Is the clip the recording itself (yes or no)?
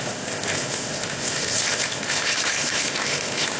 no